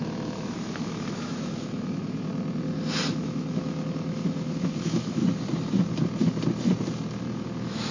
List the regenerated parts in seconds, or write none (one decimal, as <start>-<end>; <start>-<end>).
0.0-2.3; 3.1-5.2; 7.2-7.9